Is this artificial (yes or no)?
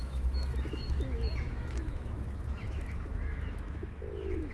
yes